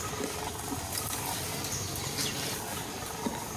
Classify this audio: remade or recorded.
recorded